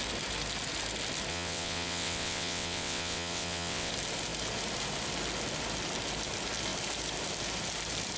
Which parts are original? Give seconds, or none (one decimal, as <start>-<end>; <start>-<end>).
0.0-1.3; 3.9-8.2